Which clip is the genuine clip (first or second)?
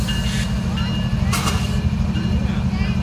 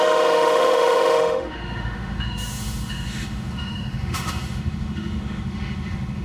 first